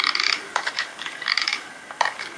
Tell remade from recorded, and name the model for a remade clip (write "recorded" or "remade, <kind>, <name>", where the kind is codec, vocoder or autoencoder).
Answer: remade, codec, DAC